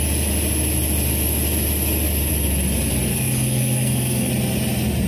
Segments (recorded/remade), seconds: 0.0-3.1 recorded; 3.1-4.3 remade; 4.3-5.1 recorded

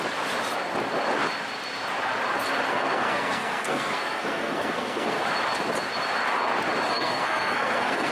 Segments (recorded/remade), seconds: 0.0-2.7 recorded; 2.7-5.2 remade; 5.2-6.9 recorded; 6.9-8.1 remade